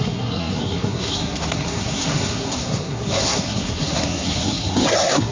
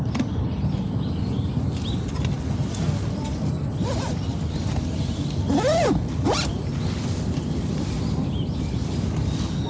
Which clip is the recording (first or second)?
second